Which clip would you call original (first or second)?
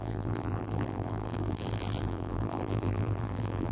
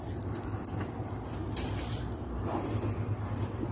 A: second